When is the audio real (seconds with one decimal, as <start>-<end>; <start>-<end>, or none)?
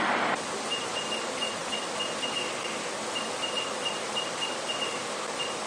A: 1.6-5.0